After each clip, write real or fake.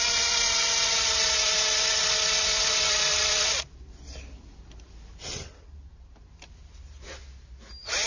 real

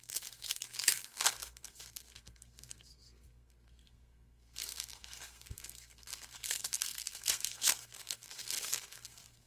fake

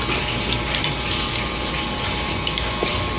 real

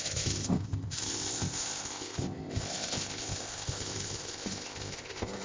fake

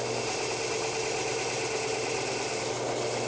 real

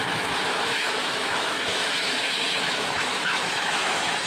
fake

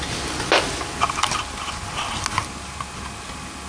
real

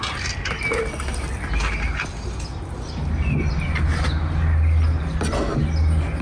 real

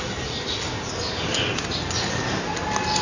real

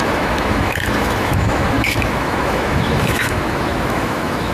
fake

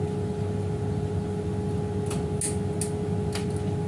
real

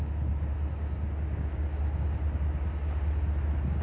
real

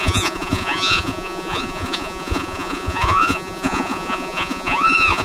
fake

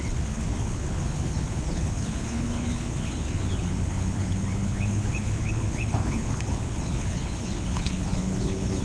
fake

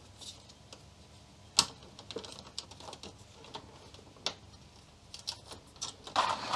real